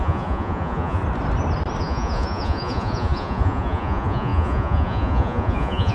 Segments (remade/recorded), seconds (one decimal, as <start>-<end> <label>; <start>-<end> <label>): 0.0-1.0 remade; 1.0-1.8 recorded; 1.8-5.9 remade